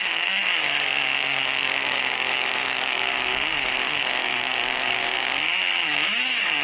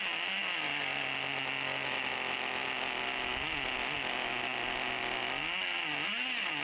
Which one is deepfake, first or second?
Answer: first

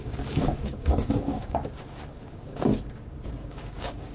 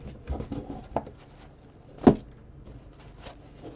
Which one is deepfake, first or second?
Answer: first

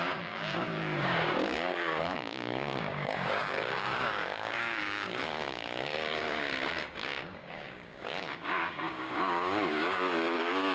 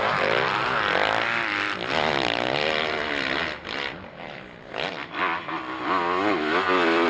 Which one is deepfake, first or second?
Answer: first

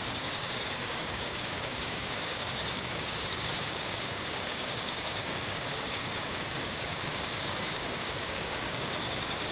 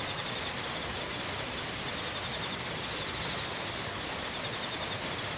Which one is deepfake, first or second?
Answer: first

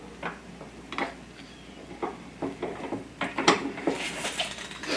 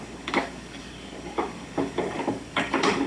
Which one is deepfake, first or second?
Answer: second